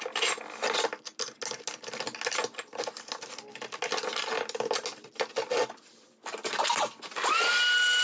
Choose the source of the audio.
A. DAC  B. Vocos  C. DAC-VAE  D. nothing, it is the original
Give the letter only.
D